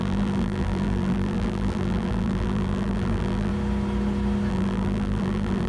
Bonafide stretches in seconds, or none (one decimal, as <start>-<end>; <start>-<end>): 3.5-4.5